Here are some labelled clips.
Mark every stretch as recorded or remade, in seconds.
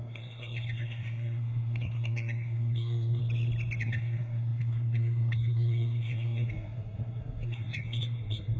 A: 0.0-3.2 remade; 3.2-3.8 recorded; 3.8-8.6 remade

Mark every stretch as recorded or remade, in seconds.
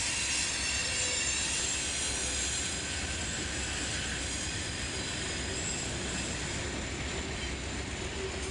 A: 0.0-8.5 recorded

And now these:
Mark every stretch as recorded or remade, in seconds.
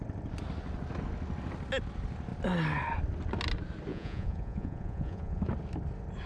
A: 0.0-3.9 recorded; 3.9-5.4 remade; 5.4-6.3 recorded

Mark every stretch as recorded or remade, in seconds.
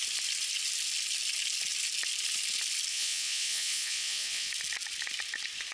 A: 0.0-2.9 recorded; 2.9-4.5 remade; 4.5-5.7 recorded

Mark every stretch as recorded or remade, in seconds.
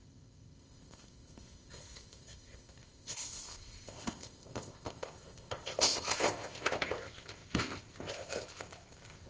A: 0.0-9.3 remade